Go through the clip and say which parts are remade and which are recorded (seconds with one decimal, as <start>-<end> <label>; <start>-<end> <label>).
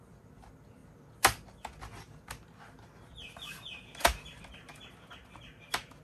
0.0-6.0 recorded